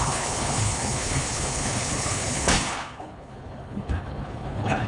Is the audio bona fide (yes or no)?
no